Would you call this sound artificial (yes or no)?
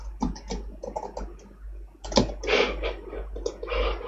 no